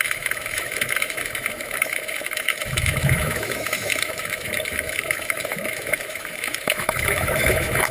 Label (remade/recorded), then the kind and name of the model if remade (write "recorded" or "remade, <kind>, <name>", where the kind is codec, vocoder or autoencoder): remade, autoencoder, DAC-VAE